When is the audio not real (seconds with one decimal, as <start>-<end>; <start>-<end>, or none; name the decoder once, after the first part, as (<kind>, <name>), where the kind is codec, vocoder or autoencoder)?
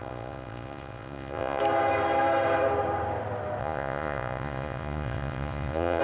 0.0-1.6 (vocoder, Vocos); 3.6-6.0